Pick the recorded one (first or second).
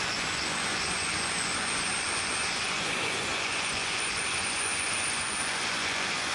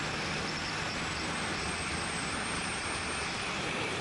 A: second